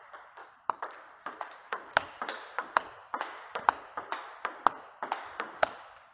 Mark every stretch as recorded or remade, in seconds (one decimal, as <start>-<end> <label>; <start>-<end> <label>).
0.0-0.4 recorded; 0.4-2.2 remade; 2.2-6.1 recorded